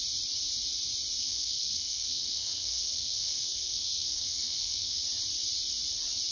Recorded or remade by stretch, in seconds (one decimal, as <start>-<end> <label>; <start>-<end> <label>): 0.0-1.2 recorded; 1.2-5.0 remade; 5.0-6.3 recorded